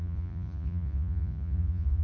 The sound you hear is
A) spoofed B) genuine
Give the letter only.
A